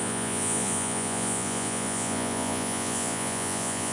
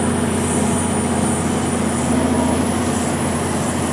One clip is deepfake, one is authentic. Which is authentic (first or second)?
second